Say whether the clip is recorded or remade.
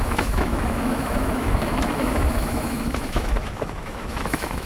remade